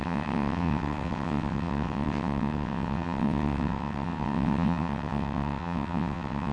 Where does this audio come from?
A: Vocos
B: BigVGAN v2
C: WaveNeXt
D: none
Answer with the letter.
C